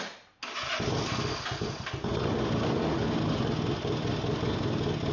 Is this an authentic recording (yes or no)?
yes